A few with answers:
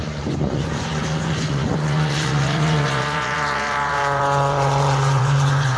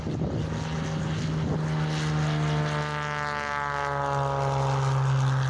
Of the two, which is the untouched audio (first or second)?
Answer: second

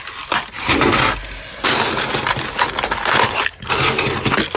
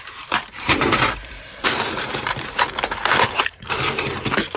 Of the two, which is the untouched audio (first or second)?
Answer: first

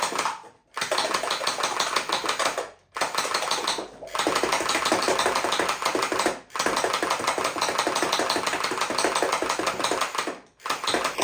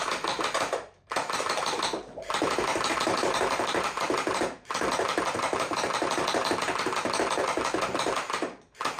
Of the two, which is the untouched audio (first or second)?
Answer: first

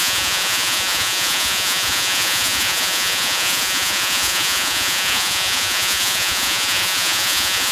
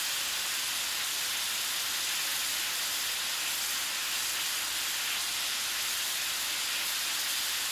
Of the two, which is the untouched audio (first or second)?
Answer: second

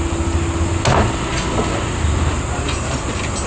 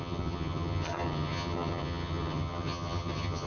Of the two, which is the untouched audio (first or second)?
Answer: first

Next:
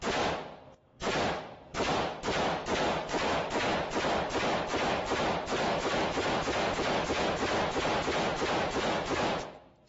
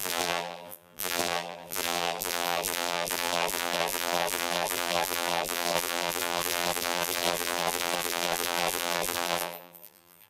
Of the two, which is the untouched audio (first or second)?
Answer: first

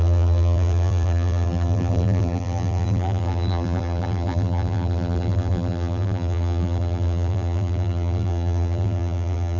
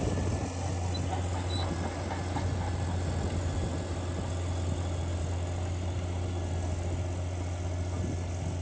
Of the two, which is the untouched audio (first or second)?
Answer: second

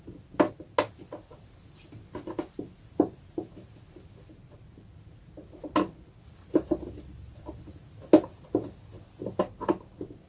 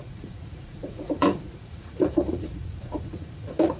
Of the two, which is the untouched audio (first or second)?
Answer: first